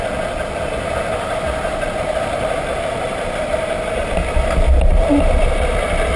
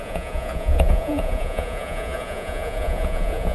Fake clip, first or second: second